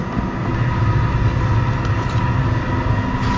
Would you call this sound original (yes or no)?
yes